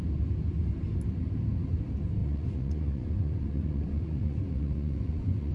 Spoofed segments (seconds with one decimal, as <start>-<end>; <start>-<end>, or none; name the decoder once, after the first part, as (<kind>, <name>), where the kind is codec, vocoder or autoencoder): 2.2-5.5 (vocoder, Vocos)